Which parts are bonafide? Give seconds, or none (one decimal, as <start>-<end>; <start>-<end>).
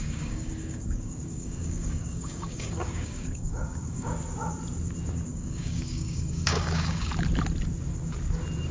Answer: 4.1-5.3; 7.1-8.7